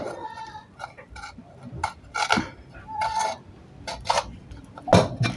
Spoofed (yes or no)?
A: no